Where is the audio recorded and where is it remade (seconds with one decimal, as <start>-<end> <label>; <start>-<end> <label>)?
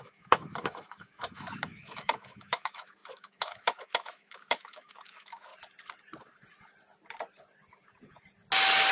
0.0-5.5 remade; 5.5-8.9 recorded